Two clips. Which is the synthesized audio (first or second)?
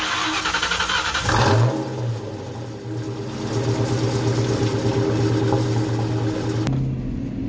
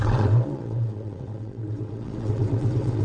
second